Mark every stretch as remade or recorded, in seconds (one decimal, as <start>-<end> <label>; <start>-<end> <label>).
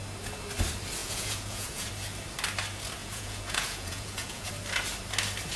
0.0-1.0 recorded; 1.0-1.9 remade; 1.9-3.0 recorded; 3.0-4.5 remade; 4.5-5.6 recorded